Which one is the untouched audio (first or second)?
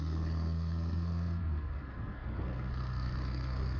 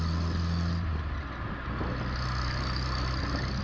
second